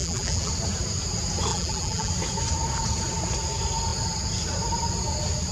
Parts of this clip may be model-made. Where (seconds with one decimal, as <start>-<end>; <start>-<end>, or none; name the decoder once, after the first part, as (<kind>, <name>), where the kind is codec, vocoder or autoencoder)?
0.0-0.5 (vocoder, BigVGAN v2); 1.5-2.1